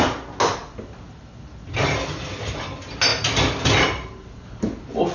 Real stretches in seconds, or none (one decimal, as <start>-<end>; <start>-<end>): 0.0-5.1